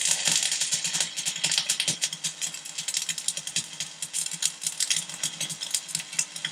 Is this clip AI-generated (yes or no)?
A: no